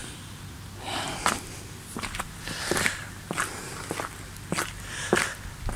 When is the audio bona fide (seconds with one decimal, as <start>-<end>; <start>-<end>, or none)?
0.0-5.8